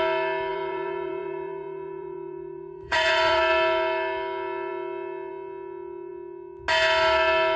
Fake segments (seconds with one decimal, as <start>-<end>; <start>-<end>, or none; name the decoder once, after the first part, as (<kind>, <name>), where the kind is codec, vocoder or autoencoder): 0.5-3.4 (vocoder, BigVGAN v2)